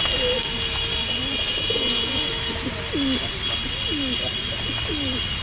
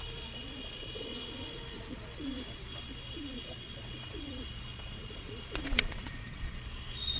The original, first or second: first